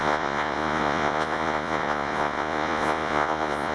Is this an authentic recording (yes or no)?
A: no